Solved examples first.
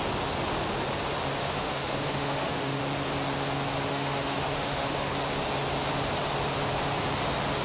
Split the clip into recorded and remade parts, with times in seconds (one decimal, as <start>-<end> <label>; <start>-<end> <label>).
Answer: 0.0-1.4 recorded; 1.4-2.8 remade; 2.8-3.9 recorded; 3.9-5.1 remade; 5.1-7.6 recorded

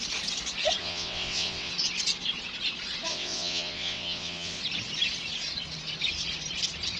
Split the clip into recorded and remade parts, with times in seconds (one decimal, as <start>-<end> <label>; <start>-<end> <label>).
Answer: 0.0-0.8 recorded; 0.8-1.7 remade; 1.7-3.1 recorded; 3.1-4.6 remade; 4.6-7.0 recorded

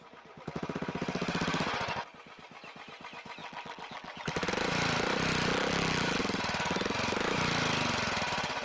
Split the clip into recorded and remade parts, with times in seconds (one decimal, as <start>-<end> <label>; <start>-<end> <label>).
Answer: 0.0-3.4 recorded; 3.4-4.2 remade; 4.2-5.5 recorded; 5.5-6.2 remade; 6.2-8.6 recorded